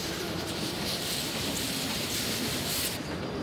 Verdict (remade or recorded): remade